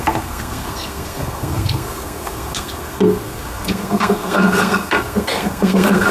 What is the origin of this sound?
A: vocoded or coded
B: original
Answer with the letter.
A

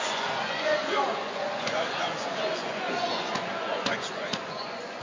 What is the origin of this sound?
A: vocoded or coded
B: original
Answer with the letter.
A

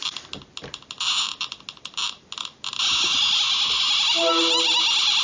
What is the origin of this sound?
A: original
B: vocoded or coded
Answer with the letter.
A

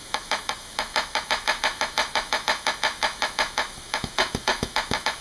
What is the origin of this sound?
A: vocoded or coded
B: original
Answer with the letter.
A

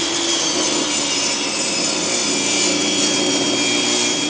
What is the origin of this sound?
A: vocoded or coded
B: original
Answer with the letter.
B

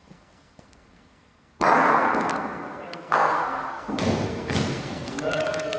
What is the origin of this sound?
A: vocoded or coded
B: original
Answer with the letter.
A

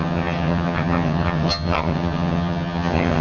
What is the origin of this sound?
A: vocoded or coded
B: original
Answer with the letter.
A